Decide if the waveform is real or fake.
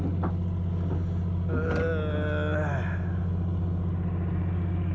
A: real